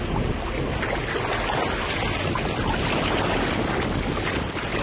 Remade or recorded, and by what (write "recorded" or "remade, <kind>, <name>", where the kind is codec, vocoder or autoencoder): recorded